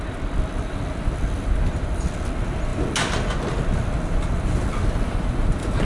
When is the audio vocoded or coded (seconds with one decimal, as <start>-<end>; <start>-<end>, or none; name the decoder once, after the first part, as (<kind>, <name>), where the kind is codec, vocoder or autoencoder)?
none